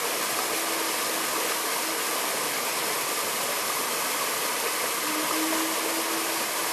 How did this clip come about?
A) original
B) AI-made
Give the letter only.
A